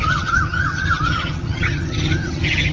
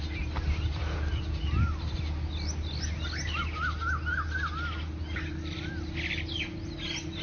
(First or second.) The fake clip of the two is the first